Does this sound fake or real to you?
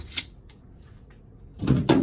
fake